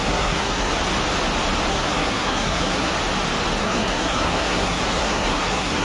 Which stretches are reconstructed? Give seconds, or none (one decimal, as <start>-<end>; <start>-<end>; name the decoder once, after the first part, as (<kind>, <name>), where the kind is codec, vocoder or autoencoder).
0.0-0.7 (codec, SNAC); 1.7-2.9; 3.6-5.8